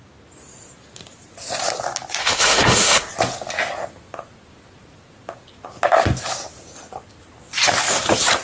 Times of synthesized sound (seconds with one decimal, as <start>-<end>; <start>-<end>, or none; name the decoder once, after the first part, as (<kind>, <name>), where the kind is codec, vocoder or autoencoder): 2.2-3.1 (autoencoder, DAC-VAE)